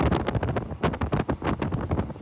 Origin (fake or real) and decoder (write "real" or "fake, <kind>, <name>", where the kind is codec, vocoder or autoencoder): real